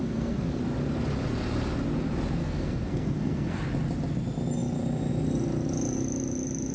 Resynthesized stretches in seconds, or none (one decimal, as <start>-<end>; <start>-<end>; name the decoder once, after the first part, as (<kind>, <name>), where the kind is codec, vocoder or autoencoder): 0.0-0.6 (codec, SNAC); 2.4-3.6